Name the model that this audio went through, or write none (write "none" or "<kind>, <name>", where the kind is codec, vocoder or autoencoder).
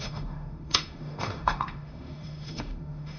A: autoencoder, DAC-VAE